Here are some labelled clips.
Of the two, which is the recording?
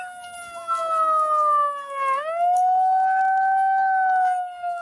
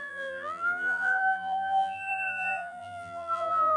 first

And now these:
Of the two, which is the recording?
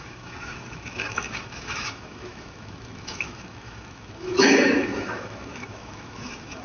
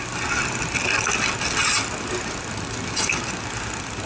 second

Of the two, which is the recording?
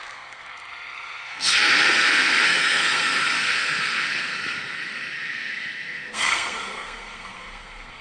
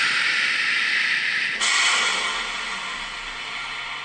second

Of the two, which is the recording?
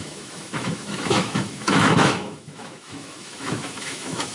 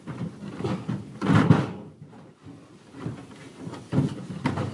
second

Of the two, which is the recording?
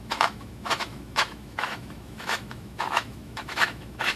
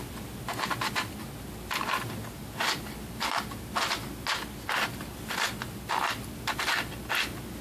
second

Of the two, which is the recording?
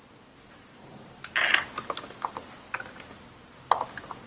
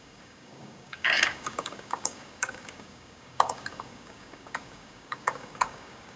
first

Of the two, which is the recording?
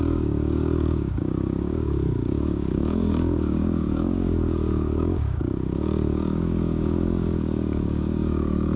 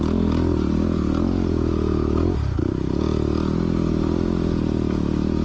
second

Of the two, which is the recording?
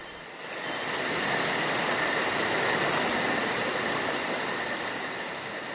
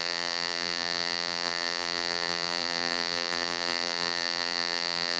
first